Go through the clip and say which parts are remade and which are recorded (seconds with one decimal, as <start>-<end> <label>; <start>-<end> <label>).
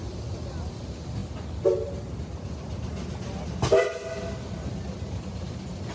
0.0-5.9 recorded